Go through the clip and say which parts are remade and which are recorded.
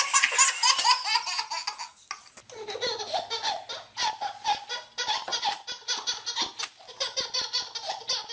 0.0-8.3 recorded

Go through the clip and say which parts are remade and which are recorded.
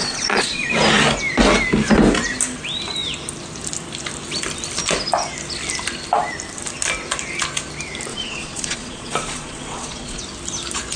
0.0-0.7 remade; 0.7-8.1 recorded; 8.1-10.2 remade; 10.2-11.0 recorded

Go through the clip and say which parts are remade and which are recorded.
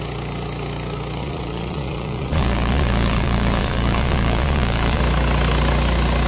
0.0-1.2 recorded; 1.2-5.0 remade; 5.0-6.3 recorded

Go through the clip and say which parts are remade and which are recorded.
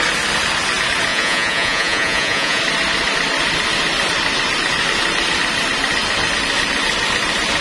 0.0-1.1 recorded; 1.1-2.6 remade; 2.6-7.6 recorded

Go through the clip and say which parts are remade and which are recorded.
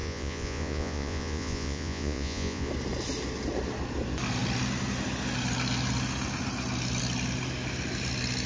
0.0-2.7 remade; 2.7-8.5 recorded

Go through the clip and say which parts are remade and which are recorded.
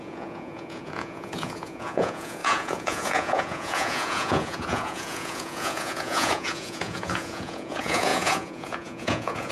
0.0-9.5 remade